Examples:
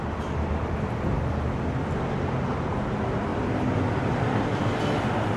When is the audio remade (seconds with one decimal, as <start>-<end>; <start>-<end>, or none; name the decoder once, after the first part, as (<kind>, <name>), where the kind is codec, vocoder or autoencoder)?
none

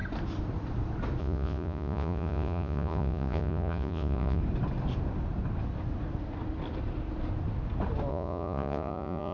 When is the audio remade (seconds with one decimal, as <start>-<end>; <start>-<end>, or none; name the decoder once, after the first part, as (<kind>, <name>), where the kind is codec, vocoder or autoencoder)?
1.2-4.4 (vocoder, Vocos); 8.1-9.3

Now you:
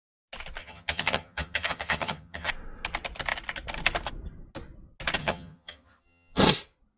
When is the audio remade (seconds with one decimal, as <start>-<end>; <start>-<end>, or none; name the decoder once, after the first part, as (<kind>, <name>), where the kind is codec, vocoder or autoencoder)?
0.6-2.5 (vocoder, HiFi-GAN); 5.2-6.4

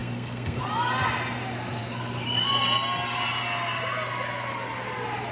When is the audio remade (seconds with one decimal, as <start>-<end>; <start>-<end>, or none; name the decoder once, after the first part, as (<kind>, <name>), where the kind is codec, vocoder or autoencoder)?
0.0-0.6 (codec, SNAC)